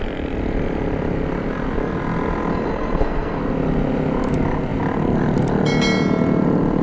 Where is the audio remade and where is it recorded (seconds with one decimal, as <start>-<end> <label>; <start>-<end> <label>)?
0.0-2.5 recorded; 2.5-3.4 remade; 3.4-6.8 recorded